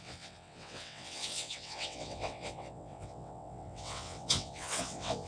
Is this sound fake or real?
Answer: fake